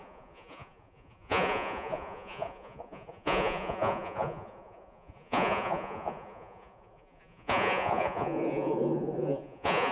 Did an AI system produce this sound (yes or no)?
yes